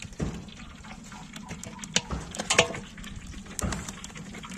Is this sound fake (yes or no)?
no